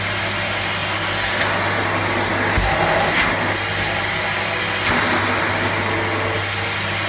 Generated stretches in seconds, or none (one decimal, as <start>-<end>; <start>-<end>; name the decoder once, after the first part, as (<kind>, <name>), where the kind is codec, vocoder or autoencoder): none